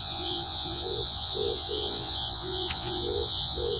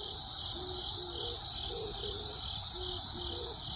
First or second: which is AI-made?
first